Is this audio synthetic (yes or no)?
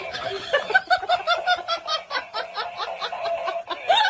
no